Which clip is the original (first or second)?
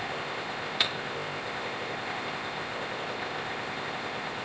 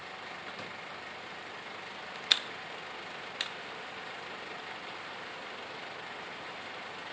second